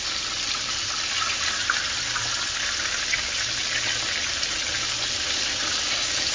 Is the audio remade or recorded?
recorded